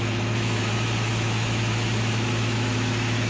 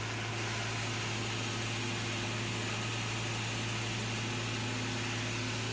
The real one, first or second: second